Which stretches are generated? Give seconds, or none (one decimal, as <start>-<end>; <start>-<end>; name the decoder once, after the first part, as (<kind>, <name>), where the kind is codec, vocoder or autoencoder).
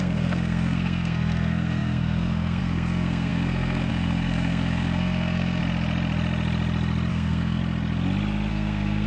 0.0-5.6 (codec, SNAC); 7.1-7.6; 8.5-9.1